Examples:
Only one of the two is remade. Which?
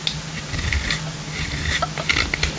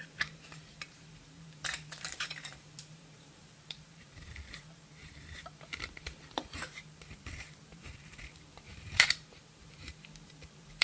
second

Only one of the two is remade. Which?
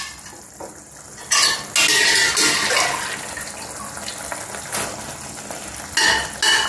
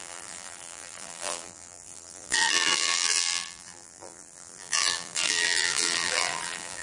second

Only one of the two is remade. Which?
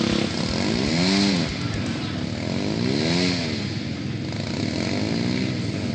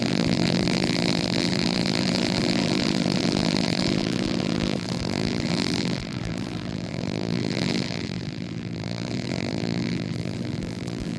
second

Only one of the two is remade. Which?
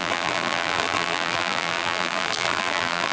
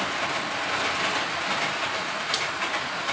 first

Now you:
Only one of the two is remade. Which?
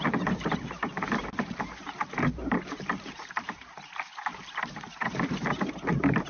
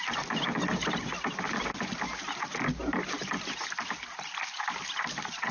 first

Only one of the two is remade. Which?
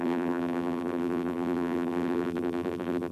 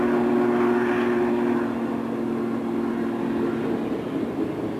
first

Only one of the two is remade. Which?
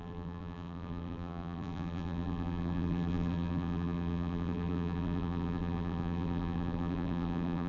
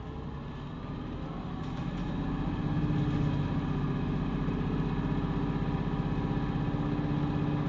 first